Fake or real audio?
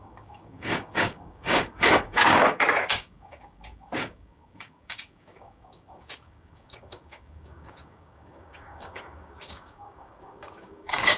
fake